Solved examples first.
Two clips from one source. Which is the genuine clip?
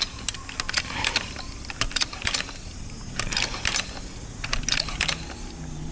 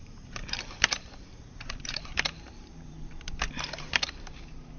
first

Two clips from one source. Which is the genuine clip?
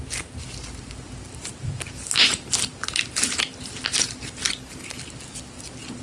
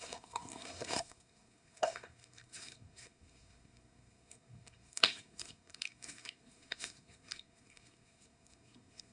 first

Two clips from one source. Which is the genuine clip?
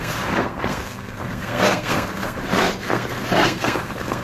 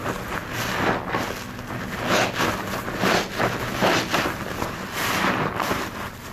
second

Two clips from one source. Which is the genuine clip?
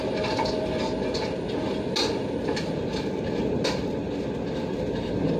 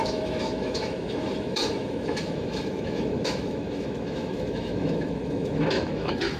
first